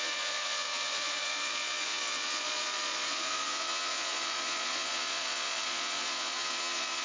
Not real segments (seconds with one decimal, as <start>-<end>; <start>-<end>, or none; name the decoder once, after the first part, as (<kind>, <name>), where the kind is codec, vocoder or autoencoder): 0.0-7.0 (vocoder, Vocos)